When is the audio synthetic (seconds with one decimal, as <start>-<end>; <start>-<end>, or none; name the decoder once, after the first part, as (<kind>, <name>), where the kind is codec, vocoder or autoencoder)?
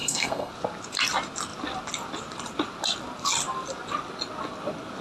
0.0-0.5 (codec, SNAC)